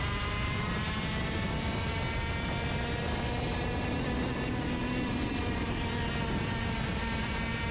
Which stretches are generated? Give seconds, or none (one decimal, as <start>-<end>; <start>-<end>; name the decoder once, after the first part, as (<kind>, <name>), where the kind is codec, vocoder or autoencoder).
none

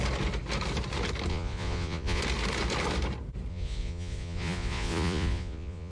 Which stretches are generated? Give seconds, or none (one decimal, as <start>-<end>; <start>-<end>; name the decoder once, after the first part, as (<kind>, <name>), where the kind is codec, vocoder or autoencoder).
1.3-2.2 (vocoder, Vocos); 3.5-5.9